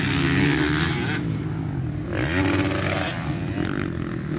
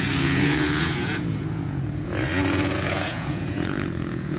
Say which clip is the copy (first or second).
second